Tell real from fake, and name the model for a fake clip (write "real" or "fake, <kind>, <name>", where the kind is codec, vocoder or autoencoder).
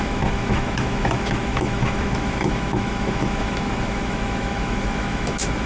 fake, autoencoder, DAC-VAE